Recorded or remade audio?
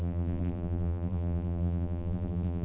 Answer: remade